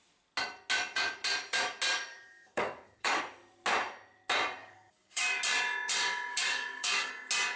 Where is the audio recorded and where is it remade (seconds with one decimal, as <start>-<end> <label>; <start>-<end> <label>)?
0.0-2.1 recorded; 2.1-3.2 remade; 3.2-4.6 recorded; 4.6-5.4 remade; 5.4-6.3 recorded; 6.3-7.1 remade; 7.1-7.6 recorded